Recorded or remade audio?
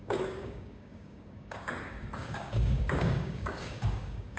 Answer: remade